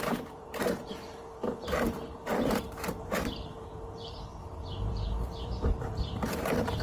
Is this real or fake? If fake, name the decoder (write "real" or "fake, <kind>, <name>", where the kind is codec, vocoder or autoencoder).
fake, vocoder, BigVGAN v2